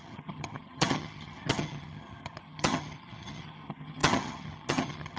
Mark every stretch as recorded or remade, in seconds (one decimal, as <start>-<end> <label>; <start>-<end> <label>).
0.0-5.2 remade

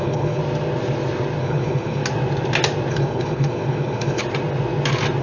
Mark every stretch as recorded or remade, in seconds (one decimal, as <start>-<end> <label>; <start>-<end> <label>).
0.0-0.4 remade; 0.4-1.4 recorded; 1.4-2.0 remade; 2.0-2.9 recorded; 2.9-4.2 remade; 4.2-5.2 recorded

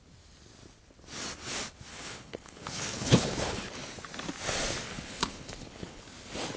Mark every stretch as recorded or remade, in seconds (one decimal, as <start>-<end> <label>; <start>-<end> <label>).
0.0-1.9 recorded; 1.9-3.7 remade; 3.7-4.9 recorded; 4.9-6.0 remade; 6.0-6.6 recorded

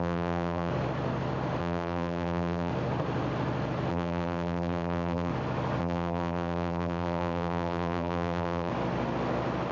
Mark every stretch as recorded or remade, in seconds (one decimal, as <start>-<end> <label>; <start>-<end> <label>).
0.0-0.7 remade; 0.7-1.6 recorded; 1.6-2.7 remade; 2.7-3.9 recorded; 3.9-5.3 remade; 5.3-5.8 recorded; 5.8-8.7 remade; 8.7-9.7 recorded

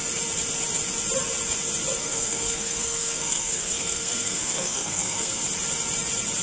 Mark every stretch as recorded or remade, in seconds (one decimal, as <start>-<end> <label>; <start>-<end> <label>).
0.0-2.0 recorded; 2.0-5.4 remade; 5.4-6.4 recorded

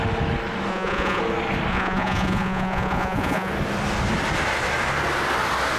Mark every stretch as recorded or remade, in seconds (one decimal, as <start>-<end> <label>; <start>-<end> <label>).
0.0-0.7 recorded; 0.7-1.2 remade; 1.2-1.7 recorded; 1.7-3.5 remade; 3.5-5.8 recorded